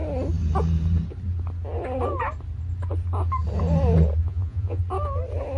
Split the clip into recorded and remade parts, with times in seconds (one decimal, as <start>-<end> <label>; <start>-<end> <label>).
0.0-4.2 recorded; 4.2-4.8 remade; 4.8-5.6 recorded